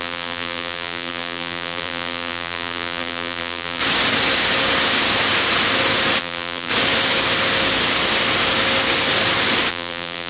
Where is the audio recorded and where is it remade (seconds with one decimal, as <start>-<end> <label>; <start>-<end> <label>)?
0.0-3.8 remade; 3.8-6.2 recorded; 6.2-6.7 remade; 6.7-9.7 recorded; 9.7-10.3 remade